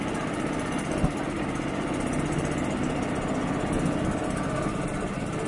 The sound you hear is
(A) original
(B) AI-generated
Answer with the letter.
A